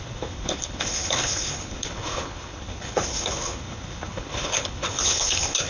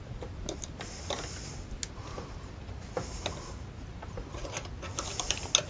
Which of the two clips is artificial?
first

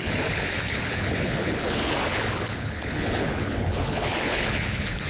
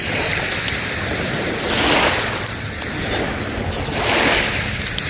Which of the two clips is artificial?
first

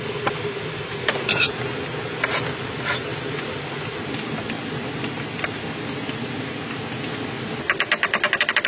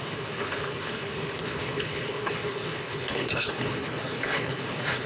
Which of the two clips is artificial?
second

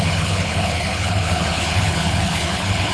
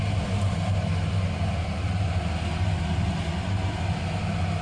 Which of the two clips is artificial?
first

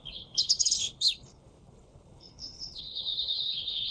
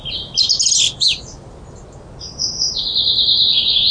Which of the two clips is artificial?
first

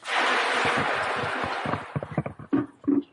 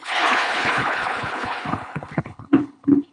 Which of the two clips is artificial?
second